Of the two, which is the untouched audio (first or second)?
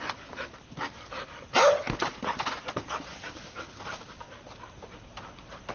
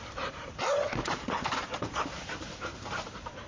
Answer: first